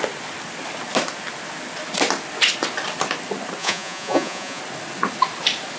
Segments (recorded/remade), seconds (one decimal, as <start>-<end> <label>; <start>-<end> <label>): 0.0-3.6 recorded; 3.6-4.6 remade; 4.6-5.8 recorded